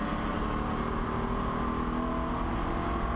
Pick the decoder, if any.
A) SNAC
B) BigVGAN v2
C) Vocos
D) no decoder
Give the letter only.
D